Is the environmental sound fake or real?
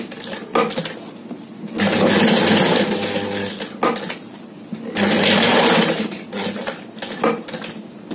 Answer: real